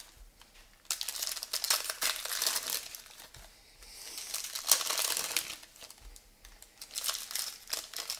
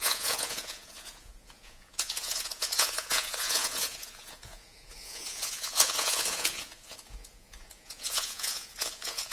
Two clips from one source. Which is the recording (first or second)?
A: first